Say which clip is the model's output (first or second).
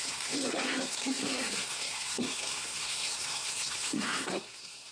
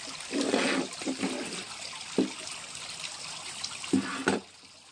first